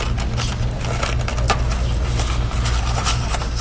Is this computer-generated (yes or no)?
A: no